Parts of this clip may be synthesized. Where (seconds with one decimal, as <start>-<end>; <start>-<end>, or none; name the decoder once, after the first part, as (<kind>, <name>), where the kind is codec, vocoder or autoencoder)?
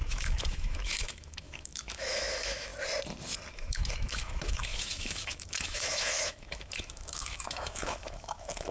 0.0-2.7 (autoencoder, DAC-VAE); 3.5-8.7